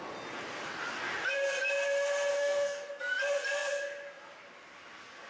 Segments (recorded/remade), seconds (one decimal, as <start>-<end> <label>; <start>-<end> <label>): 0.0-2.3 recorded; 2.3-2.9 remade; 2.9-5.3 recorded